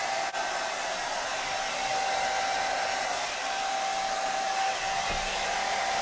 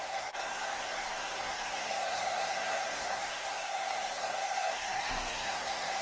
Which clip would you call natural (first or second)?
first